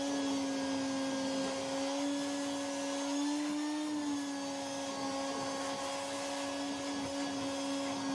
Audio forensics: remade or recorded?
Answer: recorded